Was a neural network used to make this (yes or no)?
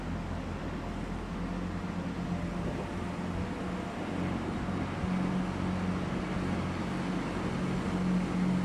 no